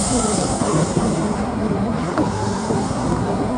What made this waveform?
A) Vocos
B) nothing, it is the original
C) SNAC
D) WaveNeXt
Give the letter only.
C